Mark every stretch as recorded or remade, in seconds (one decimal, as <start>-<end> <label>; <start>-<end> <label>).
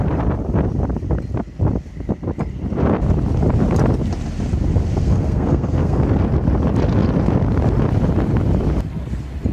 0.0-5.0 recorded; 5.0-6.0 remade; 6.0-9.5 recorded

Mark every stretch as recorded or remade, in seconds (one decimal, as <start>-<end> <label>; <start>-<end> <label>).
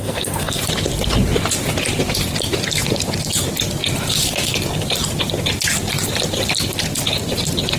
0.0-0.6 remade; 0.6-7.8 recorded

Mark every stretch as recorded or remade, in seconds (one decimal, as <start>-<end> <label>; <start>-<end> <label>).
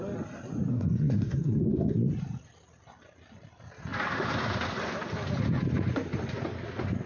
0.0-0.7 recorded; 0.7-2.1 remade; 2.1-7.1 recorded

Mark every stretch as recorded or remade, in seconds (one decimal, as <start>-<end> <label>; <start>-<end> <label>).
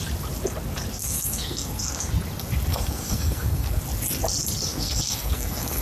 0.0-0.9 recorded; 0.9-2.1 remade; 2.1-2.7 recorded; 2.7-3.8 remade; 3.8-4.7 recorded; 4.7-5.8 remade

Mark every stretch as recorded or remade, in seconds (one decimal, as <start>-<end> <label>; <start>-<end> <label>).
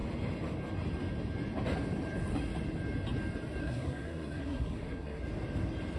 0.0-3.6 recorded; 3.6-5.2 remade; 5.2-6.0 recorded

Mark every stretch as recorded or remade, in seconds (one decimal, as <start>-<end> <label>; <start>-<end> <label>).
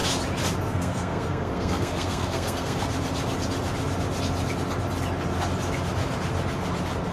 0.0-0.6 recorded; 0.6-2.8 remade; 2.8-7.1 recorded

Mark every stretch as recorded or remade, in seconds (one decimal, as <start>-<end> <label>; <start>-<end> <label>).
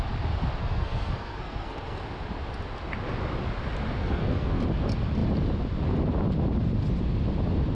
0.0-0.6 recorded; 0.6-2.0 remade; 2.0-4.0 recorded; 4.0-4.6 remade; 4.6-7.7 recorded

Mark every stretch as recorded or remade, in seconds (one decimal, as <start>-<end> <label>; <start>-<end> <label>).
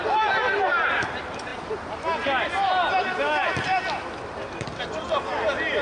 0.0-5.8 recorded